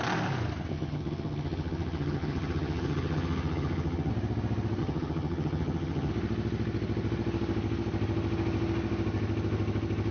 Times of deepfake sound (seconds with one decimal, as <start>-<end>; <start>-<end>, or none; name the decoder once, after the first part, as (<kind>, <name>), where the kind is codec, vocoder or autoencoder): 0.7-4.1 (vocoder, HiFi-GAN); 4.8-6.1